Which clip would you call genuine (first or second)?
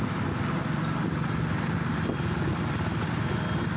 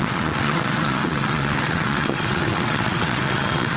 first